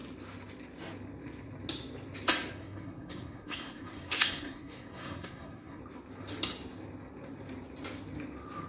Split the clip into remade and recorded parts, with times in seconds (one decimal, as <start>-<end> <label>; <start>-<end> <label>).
0.0-2.6 recorded; 2.6-5.8 remade; 5.8-8.7 recorded